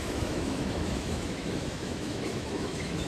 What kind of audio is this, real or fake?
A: fake